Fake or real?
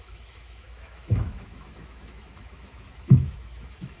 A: fake